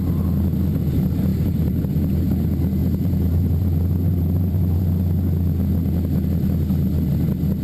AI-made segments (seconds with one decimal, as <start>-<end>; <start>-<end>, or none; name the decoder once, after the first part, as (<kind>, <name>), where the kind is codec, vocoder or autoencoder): 1.3-1.8 (vocoder, BigVGAN v2); 2.8-4.8